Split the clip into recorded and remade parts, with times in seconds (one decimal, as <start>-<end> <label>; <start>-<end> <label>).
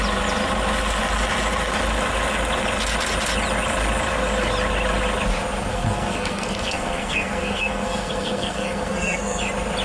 0.0-5.7 recorded; 5.7-9.4 remade; 9.4-9.8 recorded